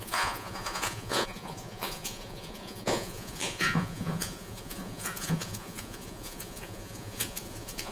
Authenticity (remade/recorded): remade